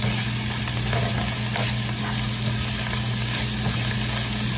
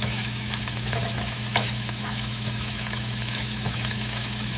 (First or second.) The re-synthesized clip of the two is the second